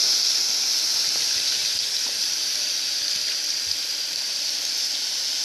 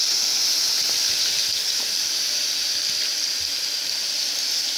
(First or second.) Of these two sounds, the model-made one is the first